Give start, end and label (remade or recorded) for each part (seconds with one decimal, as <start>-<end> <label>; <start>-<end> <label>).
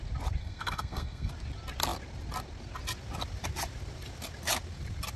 0.0-0.4 recorded; 0.4-1.3 remade; 1.3-5.2 recorded